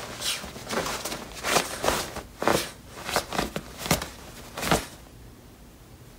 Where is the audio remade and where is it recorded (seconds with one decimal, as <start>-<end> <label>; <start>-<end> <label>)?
0.0-0.6 recorded; 0.6-2.0 remade; 2.0-2.5 recorded; 2.5-5.7 remade; 5.7-6.2 recorded